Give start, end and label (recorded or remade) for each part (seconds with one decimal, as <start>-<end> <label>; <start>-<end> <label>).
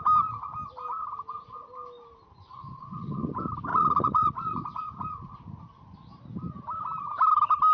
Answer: 0.0-2.6 recorded; 2.6-3.3 remade; 3.3-3.7 recorded; 3.7-5.6 remade; 5.6-7.7 recorded